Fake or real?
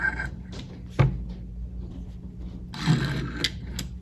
real